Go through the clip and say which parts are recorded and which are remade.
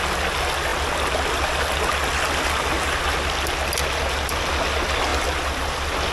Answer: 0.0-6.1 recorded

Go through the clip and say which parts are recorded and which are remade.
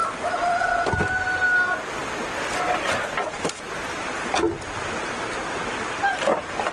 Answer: 0.0-0.6 remade; 0.6-2.0 recorded; 2.0-6.0 remade; 6.0-6.7 recorded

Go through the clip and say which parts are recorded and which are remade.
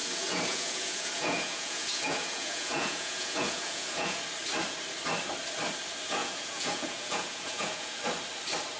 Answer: 0.0-4.2 remade; 4.2-6.2 recorded; 6.2-8.0 remade; 8.0-8.8 recorded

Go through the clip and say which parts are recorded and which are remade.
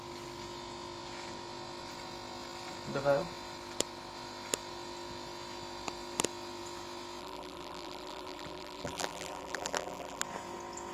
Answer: 0.0-7.2 recorded; 7.2-10.2 remade; 10.2-10.9 recorded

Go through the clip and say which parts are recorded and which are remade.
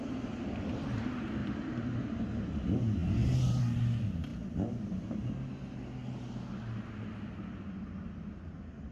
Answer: 0.0-1.4 recorded; 1.4-2.0 remade; 2.0-3.0 recorded; 3.0-3.6 remade; 3.6-4.3 recorded; 4.3-5.3 remade; 5.3-8.9 recorded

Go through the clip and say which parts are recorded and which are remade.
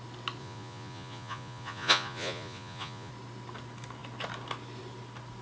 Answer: 0.0-0.4 recorded; 0.4-3.1 remade; 3.1-5.4 recorded